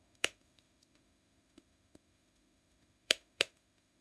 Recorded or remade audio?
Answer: remade